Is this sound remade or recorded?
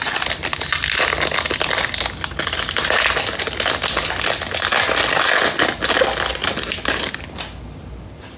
recorded